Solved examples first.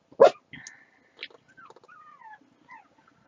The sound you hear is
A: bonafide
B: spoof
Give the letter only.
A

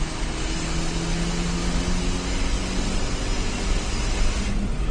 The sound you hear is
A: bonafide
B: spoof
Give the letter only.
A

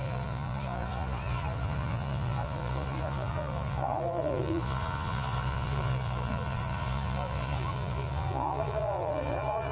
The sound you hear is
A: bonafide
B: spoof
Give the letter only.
B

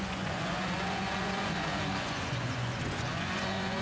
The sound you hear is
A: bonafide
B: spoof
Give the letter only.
B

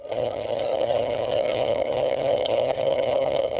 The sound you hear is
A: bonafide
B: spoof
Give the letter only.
B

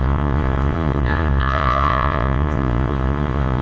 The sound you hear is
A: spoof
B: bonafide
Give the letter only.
A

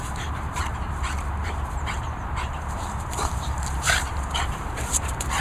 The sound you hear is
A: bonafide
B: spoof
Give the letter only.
B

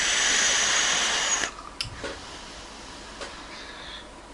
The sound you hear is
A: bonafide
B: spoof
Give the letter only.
A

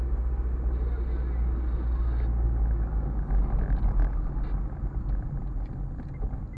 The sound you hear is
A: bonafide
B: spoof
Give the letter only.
A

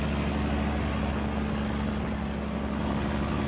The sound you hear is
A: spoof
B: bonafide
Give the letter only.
B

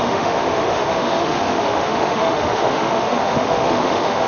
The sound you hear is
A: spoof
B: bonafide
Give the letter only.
A